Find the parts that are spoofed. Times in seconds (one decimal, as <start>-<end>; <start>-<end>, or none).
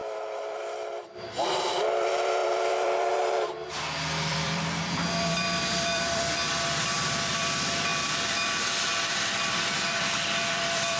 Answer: 0.0-11.0